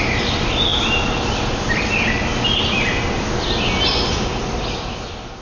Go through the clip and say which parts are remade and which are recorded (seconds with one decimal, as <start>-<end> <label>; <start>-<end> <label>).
0.0-5.4 recorded